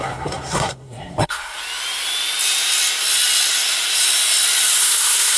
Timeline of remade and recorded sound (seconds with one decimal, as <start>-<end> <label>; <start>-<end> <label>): 0.0-1.6 remade; 1.6-4.8 recorded; 4.8-5.4 remade